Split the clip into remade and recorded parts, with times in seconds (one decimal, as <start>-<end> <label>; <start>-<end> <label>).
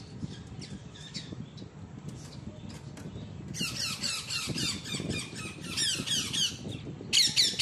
0.0-0.8 recorded; 0.8-1.4 remade; 1.4-7.6 recorded